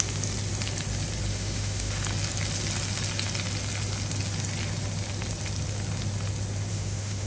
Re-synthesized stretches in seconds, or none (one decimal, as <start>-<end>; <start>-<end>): 1.3-1.9; 6.7-7.3